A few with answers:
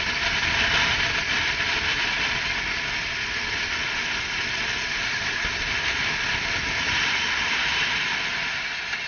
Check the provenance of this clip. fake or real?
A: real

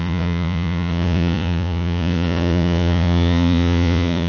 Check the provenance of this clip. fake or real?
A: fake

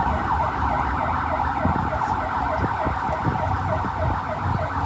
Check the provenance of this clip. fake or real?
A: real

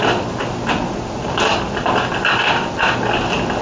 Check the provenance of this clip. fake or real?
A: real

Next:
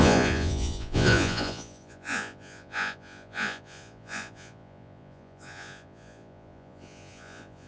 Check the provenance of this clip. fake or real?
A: fake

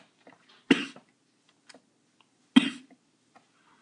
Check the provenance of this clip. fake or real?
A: real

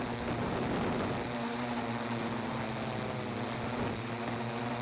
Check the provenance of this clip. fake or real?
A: real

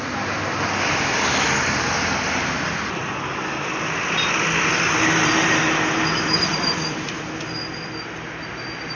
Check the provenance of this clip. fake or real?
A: real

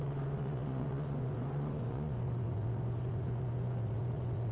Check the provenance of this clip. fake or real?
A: fake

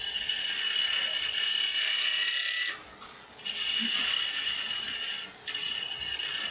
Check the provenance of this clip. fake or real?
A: real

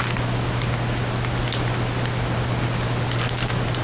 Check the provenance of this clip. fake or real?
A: real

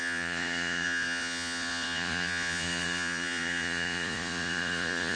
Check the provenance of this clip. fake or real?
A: fake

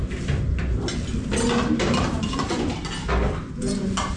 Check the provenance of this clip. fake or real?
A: real